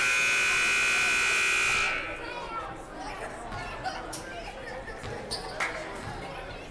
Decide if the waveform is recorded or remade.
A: recorded